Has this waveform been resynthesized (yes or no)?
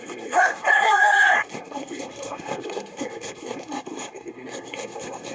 yes